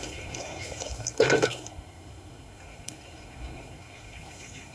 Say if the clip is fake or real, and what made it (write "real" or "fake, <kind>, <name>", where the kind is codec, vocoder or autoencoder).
fake, codec, SNAC